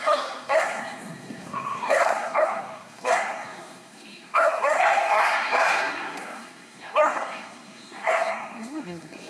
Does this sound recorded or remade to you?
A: remade